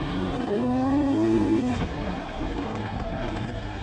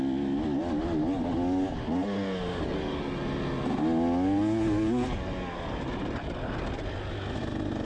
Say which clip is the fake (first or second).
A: first